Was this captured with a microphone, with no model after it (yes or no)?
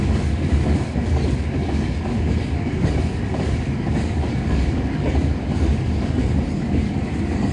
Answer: no